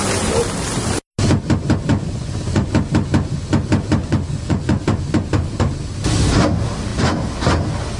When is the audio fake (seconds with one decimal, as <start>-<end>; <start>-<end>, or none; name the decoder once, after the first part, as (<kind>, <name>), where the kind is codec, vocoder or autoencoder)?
1.9-2.7 (vocoder, Vocos); 4.0-4.8